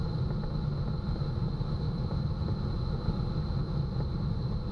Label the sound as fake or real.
real